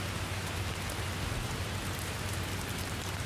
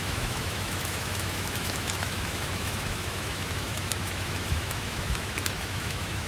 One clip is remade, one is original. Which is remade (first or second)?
second